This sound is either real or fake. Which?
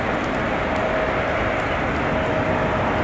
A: real